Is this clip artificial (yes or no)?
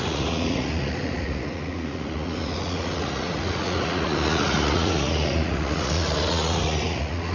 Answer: yes